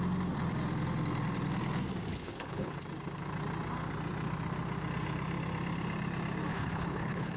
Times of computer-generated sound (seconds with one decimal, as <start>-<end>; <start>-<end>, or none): 2.1-2.7; 6.5-7.4